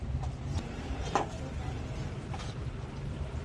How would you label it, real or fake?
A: fake